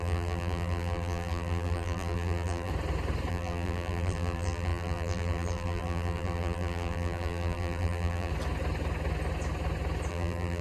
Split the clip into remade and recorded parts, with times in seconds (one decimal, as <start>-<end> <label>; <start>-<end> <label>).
0.0-2.7 remade; 2.7-3.3 recorded; 3.3-8.3 remade; 8.3-10.1 recorded; 10.1-10.6 remade